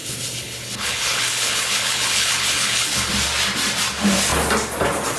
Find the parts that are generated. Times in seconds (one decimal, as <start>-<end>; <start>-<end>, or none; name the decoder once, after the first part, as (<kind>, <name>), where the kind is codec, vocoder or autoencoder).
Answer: 0.0-3.1 (codec, HILCodec)